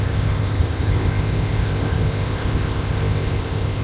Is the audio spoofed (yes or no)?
yes